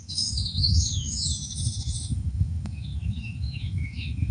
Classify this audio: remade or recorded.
remade